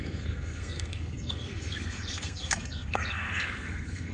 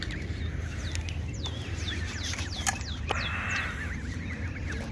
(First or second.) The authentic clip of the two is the second